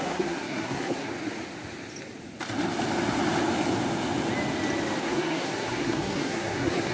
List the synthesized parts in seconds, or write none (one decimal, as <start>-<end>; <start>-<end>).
0.0-1.1; 5.0-6.9

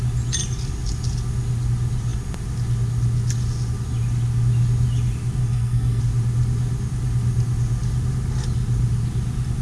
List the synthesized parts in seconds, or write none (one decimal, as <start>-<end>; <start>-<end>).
5.4-6.0